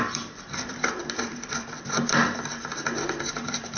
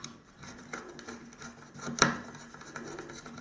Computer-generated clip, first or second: first